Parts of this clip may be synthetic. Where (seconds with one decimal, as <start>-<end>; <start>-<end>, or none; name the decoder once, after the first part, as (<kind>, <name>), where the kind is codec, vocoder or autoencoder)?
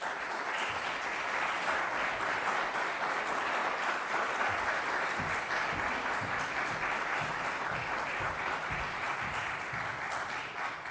none